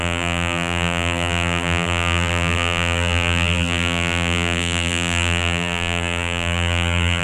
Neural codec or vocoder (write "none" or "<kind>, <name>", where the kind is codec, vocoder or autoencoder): vocoder, BigVGAN v2